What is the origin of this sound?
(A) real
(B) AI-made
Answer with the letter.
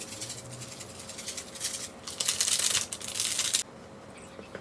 A